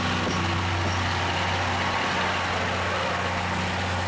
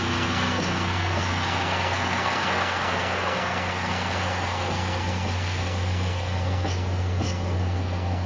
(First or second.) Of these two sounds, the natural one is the first